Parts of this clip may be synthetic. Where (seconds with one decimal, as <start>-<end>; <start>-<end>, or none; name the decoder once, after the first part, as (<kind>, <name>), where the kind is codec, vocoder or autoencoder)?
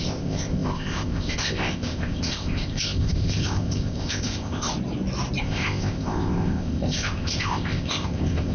0.0-4.7 (codec, ZipCodec); 5.4-8.5